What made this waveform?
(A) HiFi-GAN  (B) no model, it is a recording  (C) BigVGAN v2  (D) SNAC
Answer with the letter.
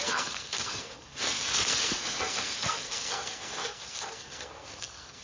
D